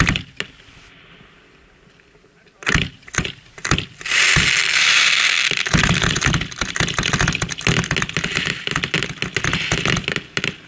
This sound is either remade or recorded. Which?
recorded